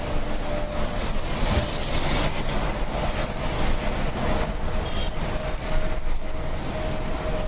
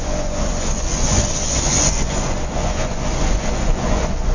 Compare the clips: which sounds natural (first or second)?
first